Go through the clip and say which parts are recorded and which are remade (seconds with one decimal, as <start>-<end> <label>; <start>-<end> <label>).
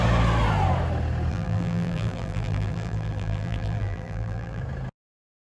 0.0-1.3 recorded; 1.3-4.6 remade; 4.6-5.5 recorded